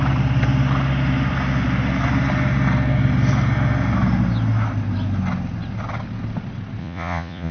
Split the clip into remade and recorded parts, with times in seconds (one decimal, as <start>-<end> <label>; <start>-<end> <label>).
0.0-6.8 recorded; 6.8-7.5 remade